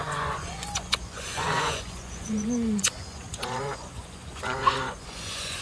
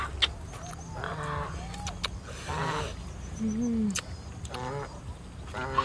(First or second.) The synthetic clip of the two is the first